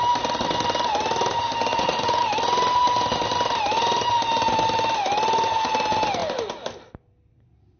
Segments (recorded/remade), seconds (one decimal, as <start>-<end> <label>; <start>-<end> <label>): 0.0-1.7 recorded; 1.7-2.2 remade; 2.2-7.8 recorded